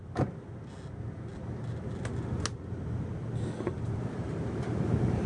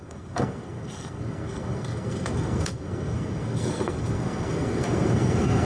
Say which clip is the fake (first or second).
second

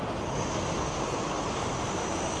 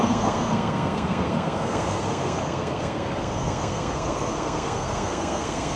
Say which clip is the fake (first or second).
second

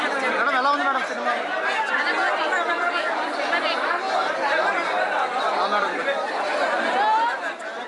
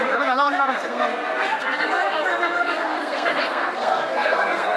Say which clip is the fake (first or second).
second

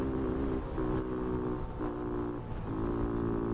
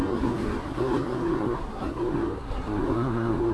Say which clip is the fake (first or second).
second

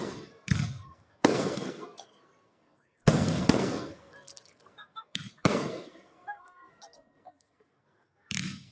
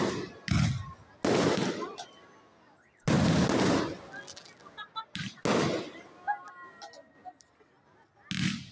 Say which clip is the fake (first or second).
first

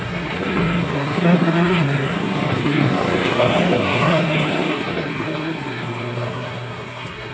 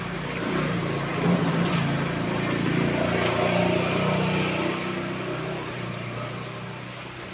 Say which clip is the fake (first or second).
first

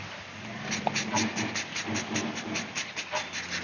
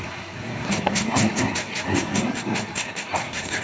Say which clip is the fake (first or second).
second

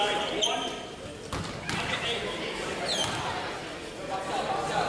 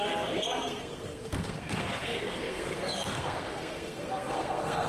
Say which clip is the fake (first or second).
second